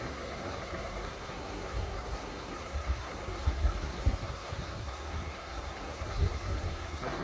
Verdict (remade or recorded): remade